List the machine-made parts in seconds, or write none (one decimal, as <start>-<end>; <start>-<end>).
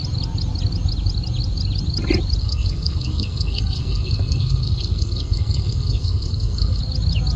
2.4-6.8